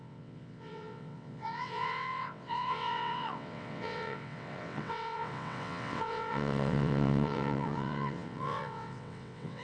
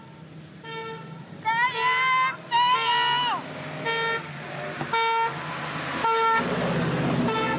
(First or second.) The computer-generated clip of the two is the first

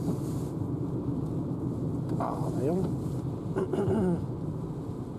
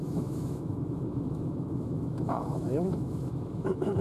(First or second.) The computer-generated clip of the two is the second